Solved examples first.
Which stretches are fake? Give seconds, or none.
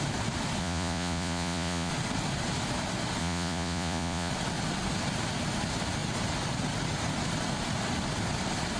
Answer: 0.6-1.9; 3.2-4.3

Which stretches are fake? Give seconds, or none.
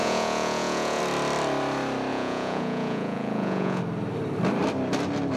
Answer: 0.0-1.0; 2.1-3.8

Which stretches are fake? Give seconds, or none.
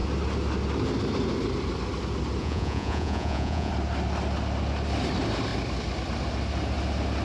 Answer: 2.4-3.7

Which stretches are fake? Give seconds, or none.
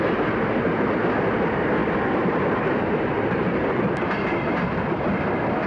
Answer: none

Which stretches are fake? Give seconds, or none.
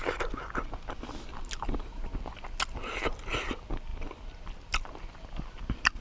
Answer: none